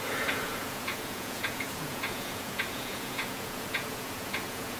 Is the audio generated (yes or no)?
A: yes